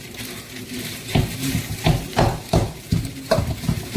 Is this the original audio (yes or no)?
no